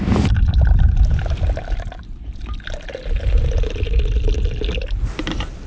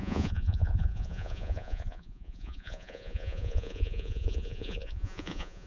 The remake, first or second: second